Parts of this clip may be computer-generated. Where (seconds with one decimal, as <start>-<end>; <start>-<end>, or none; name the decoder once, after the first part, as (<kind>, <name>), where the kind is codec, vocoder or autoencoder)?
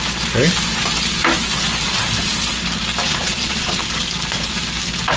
3.0-3.8 (vocoder, Vocos)